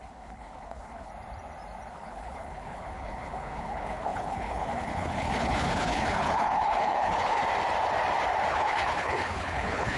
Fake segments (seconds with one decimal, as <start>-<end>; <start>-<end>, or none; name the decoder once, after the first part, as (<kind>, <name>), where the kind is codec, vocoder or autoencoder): 0.0-1.1 (codec, HILCodec); 1.9-7.4; 8.5-10.0